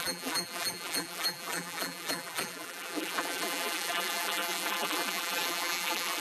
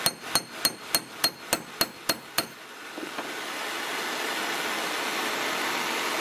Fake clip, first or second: first